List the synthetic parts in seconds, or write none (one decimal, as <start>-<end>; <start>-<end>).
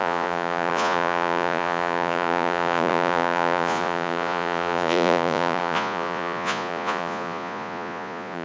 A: 0.0-8.4